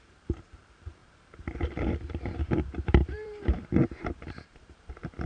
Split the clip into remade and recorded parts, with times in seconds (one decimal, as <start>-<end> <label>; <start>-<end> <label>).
0.0-5.3 remade